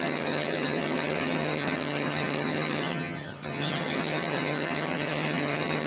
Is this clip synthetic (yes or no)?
yes